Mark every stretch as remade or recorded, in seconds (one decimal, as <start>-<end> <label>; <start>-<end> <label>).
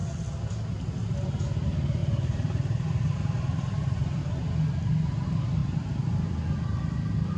0.0-2.0 recorded; 2.0-4.3 remade; 4.3-5.6 recorded; 5.6-6.2 remade; 6.2-7.4 recorded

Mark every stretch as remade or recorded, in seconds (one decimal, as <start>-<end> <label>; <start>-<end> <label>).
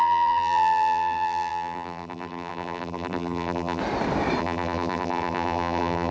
0.0-3.8 remade; 3.8-4.4 recorded; 4.4-6.1 remade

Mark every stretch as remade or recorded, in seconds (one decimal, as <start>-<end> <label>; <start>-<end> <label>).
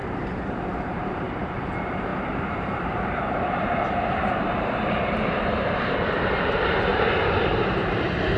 0.0-8.4 remade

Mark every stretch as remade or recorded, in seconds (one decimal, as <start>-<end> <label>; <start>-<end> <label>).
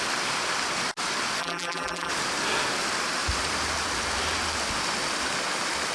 0.0-1.4 recorded; 1.4-2.1 remade; 2.1-5.9 recorded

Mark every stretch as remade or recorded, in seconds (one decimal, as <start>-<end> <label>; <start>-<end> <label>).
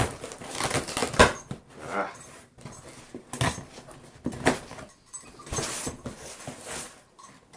0.0-1.0 recorded; 1.0-3.4 remade; 3.4-7.6 recorded